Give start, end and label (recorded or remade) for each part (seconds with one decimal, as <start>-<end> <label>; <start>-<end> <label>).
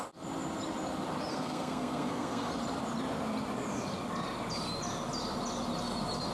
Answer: 0.0-1.3 recorded; 1.3-2.5 remade; 2.5-6.3 recorded